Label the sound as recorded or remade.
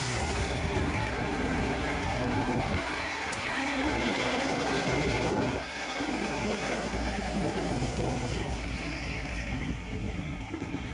remade